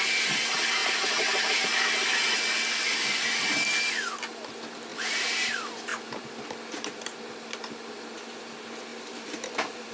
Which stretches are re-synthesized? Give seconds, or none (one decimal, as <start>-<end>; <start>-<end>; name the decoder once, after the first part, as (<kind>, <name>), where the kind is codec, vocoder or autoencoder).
0.8-1.5 (vocoder, BigVGAN v2); 4.9-5.5; 8.9-9.9